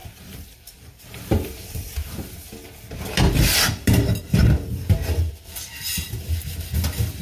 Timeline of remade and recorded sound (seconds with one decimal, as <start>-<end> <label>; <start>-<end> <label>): 0.0-2.3 remade; 2.3-7.2 recorded